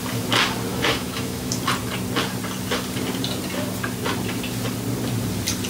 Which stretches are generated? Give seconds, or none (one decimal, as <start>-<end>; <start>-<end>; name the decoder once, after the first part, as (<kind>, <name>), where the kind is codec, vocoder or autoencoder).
0.7-1.6 (autoencoder, DAC-VAE)